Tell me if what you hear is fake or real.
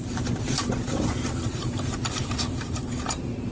fake